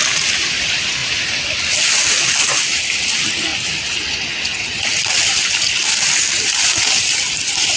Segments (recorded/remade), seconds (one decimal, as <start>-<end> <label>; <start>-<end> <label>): 0.0-7.8 recorded